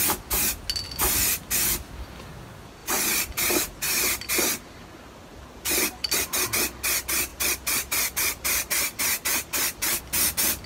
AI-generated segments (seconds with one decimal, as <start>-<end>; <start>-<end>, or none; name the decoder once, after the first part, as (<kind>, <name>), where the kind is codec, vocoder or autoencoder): 2.8-4.3 (vocoder, BigVGAN v2); 7.3-10.0